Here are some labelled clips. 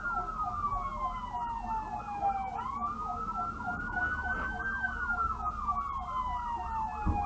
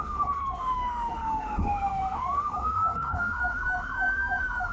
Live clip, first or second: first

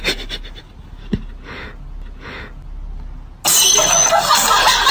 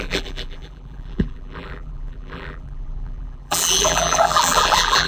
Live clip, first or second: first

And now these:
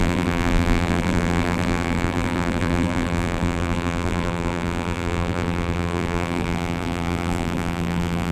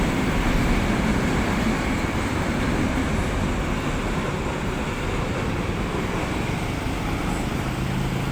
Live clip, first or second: second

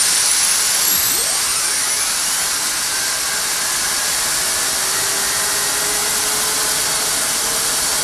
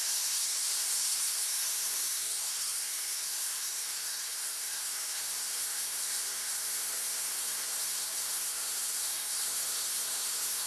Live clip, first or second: first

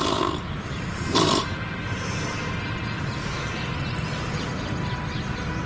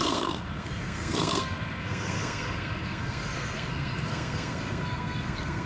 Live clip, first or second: first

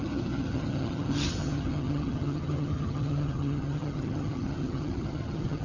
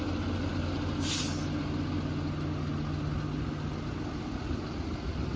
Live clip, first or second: second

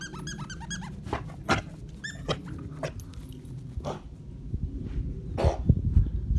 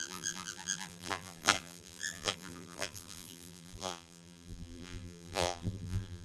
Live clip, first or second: first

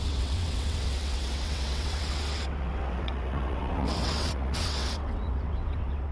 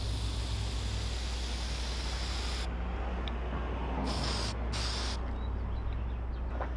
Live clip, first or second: second